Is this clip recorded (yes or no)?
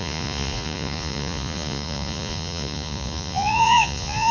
no